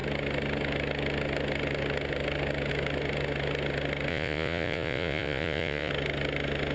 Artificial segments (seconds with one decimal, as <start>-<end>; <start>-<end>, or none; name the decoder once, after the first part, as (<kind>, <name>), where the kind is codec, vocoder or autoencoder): 4.1-5.9 (vocoder, Vocos)